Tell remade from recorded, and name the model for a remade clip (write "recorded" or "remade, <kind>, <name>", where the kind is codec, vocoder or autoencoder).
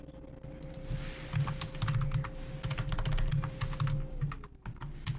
recorded